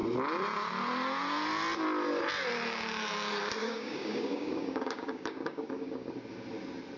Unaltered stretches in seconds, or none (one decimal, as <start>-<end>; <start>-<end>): 0.0-3.6; 6.1-7.0